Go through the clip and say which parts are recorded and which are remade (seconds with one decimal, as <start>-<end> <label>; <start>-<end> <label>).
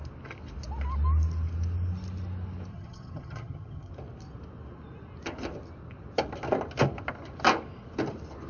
0.0-2.7 recorded; 2.7-3.9 remade; 3.9-8.5 recorded